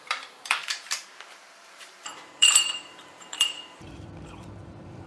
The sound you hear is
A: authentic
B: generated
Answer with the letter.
B